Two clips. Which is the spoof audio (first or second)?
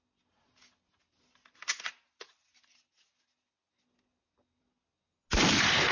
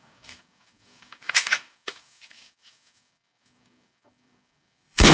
second